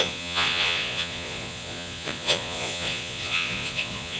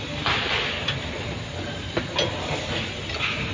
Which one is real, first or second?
second